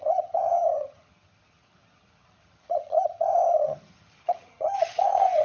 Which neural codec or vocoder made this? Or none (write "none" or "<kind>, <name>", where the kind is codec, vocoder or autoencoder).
vocoder, HiFi-GAN